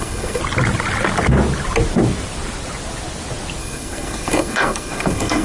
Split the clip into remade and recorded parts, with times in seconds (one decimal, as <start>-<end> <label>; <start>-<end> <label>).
0.0-0.4 remade; 0.4-3.6 recorded; 3.6-5.4 remade